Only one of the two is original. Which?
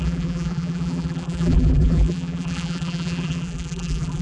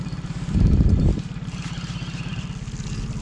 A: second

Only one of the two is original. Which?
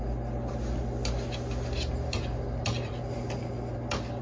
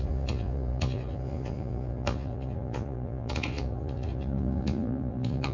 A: first